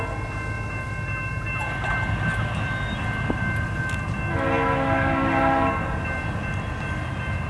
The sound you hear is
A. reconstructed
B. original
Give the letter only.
B